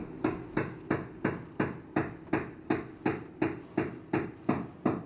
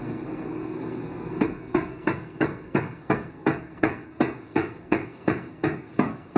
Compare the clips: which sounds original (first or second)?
first